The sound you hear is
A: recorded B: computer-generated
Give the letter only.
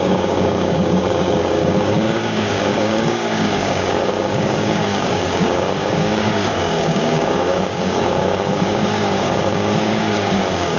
B